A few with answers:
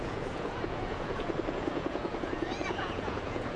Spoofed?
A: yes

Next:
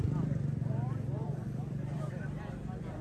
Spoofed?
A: yes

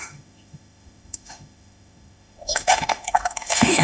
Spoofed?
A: yes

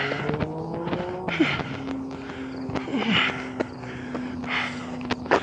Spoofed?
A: no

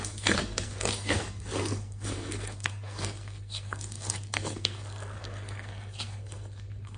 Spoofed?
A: yes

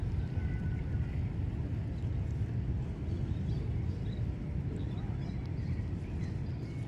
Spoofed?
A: no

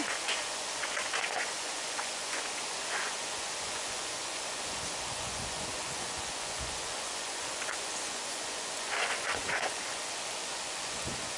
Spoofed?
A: yes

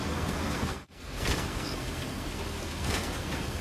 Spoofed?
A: yes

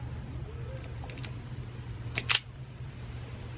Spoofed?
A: no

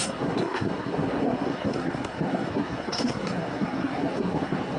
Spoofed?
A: yes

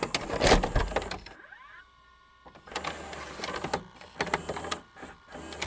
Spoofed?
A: no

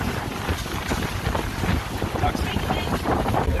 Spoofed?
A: no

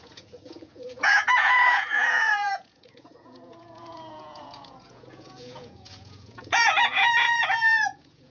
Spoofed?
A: yes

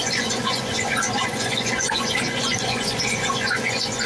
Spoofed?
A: yes